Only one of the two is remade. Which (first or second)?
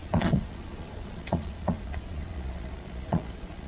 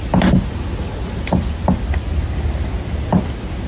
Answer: first